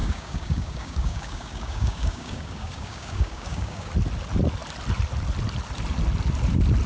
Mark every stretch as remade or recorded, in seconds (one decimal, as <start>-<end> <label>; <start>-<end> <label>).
0.0-3.9 remade; 3.9-6.9 recorded